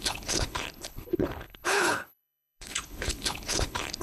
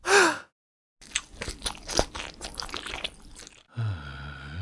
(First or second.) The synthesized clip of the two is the first